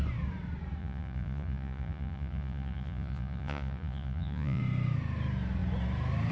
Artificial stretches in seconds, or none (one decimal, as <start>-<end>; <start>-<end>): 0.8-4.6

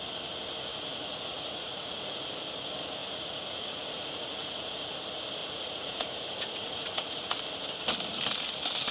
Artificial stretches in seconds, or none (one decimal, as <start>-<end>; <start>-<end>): 0.7-2.2; 3.0-4.9; 5.4-7.4

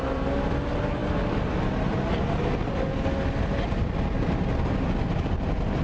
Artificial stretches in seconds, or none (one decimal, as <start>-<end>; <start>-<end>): none

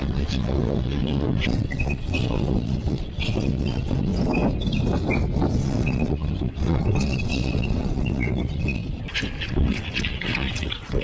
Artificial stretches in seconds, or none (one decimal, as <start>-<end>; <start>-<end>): 0.0-4.1; 5.6-8.8; 9.4-11.0